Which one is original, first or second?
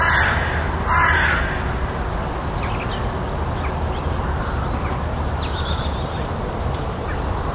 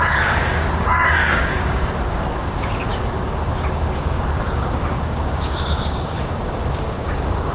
first